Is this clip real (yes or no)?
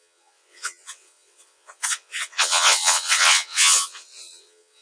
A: no